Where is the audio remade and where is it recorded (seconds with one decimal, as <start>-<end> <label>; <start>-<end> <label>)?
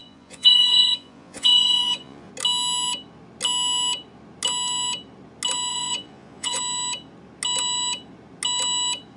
0.0-2.3 remade; 2.3-5.7 recorded; 5.7-6.6 remade; 6.6-9.2 recorded